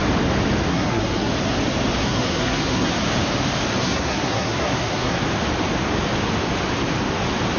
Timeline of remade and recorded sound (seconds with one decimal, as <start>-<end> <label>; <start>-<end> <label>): 0.0-0.7 recorded; 0.7-1.3 remade; 1.3-2.0 recorded; 2.0-2.9 remade; 2.9-3.8 recorded; 3.8-5.2 remade; 5.2-7.6 recorded